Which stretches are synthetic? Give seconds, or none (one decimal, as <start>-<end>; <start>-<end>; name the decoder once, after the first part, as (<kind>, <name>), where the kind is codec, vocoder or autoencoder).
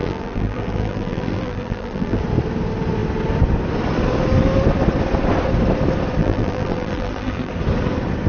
0.0-2.2 (vocoder, BigVGAN v2); 6.2-7.5